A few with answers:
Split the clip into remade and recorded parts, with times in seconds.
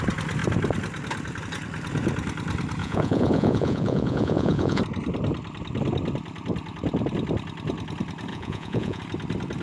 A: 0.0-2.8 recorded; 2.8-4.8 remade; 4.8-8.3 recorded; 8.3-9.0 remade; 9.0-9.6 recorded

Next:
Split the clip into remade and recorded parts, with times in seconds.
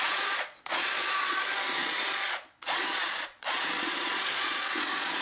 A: 0.0-5.2 remade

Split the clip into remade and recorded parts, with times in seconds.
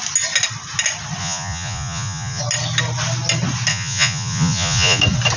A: 0.0-1.2 recorded; 1.2-2.4 remade; 2.4-3.7 recorded; 3.7-5.0 remade; 5.0-5.4 recorded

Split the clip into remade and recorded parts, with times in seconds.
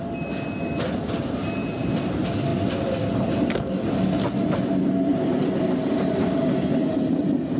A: 0.0-7.6 recorded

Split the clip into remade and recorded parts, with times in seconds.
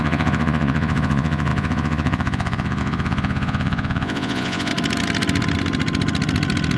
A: 0.0-4.7 remade; 4.7-6.8 recorded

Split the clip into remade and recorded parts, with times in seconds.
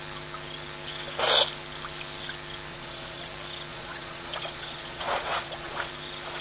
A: 0.0-2.7 recorded; 2.7-3.3 remade; 3.3-3.7 recorded; 3.7-5.9 remade; 5.9-6.4 recorded